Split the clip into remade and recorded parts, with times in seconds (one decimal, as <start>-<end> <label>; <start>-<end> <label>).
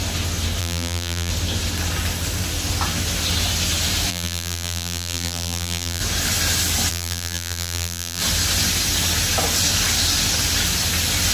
0.0-0.6 recorded; 0.6-1.3 remade; 1.3-4.1 recorded; 4.1-6.0 remade; 6.0-6.9 recorded; 6.9-8.2 remade; 8.2-11.3 recorded